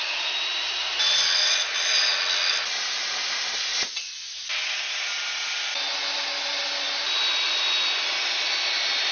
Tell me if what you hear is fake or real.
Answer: real